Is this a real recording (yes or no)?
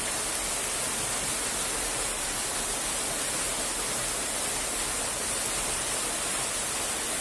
yes